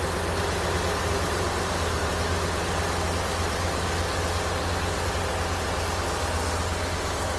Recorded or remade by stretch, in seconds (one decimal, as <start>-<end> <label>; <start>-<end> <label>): 0.0-7.4 recorded